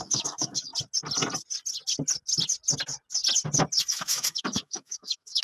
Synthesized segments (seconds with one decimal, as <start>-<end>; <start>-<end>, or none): 0.0-0.7; 3.9-5.4